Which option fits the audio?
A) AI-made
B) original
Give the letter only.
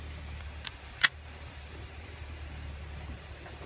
B